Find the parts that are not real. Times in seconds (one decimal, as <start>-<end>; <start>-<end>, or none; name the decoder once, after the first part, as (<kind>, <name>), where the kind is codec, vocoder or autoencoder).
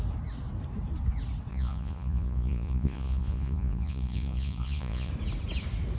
1.5-5.1 (vocoder, Vocos)